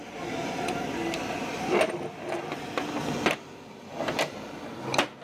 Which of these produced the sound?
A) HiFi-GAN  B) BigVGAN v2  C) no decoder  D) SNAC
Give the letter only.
C